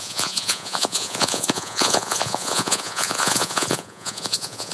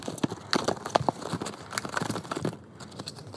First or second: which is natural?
second